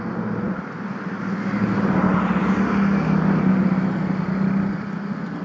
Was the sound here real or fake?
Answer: real